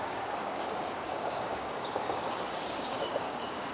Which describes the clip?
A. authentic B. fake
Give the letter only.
B